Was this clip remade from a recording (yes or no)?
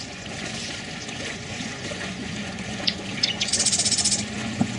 yes